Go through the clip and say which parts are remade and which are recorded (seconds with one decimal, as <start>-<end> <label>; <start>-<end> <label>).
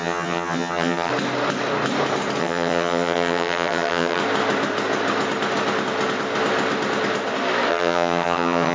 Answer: 0.0-1.1 remade; 1.1-2.4 recorded; 2.4-4.2 remade; 4.2-7.7 recorded; 7.7-8.7 remade